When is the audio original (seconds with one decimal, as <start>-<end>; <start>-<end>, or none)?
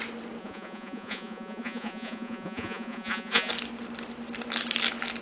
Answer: 0.0-0.4; 3.5-5.2